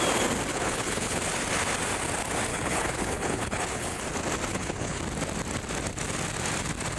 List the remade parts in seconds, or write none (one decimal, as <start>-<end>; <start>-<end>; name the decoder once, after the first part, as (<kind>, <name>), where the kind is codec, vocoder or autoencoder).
0.5-1.2 (codec, HILCodec); 2.5-4.0; 4.5-5.0